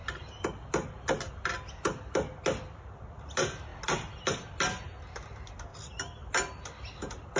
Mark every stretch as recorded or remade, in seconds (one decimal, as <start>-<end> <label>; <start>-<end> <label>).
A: 0.0-7.4 recorded